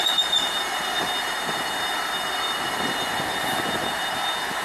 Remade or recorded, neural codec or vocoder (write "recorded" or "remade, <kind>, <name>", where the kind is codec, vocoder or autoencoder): recorded